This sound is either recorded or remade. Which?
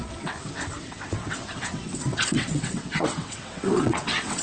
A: remade